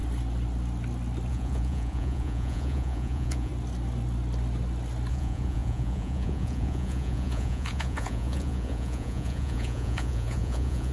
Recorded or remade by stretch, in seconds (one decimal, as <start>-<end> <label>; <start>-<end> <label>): 0.0-1.3 recorded; 1.3-3.5 remade; 3.5-5.1 recorded; 5.1-10.9 remade